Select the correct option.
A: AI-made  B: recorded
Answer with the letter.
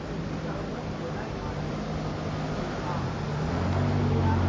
B